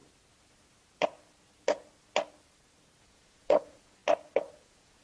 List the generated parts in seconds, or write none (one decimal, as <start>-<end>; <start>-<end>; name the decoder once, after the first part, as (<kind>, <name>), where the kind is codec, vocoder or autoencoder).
3.0-4.0 (vocoder, Vocos); 4.6-5.0